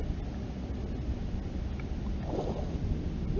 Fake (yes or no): no